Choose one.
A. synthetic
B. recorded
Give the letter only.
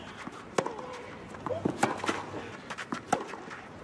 B